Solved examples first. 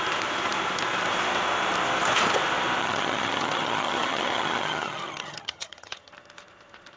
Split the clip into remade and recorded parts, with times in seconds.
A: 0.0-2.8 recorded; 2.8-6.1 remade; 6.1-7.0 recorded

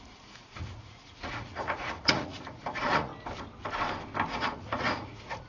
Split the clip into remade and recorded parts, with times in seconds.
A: 0.0-3.1 remade; 3.1-4.3 recorded; 4.3-5.5 remade

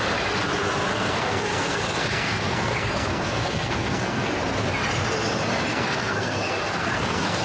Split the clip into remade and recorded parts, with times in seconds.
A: 0.0-0.9 recorded; 0.9-4.3 remade; 4.3-5.7 recorded; 5.7-7.4 remade

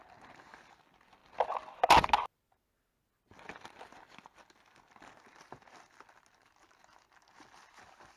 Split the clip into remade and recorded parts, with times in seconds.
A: 0.0-8.2 recorded